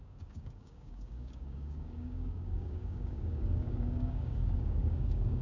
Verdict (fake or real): fake